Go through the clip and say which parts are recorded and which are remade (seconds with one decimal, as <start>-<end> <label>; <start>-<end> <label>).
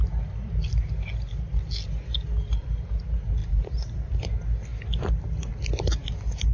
0.0-3.4 recorded; 3.4-4.2 remade; 4.2-6.5 recorded